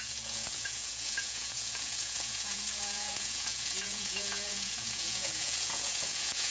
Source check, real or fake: fake